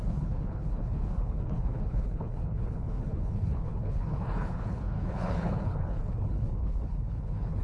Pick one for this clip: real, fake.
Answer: fake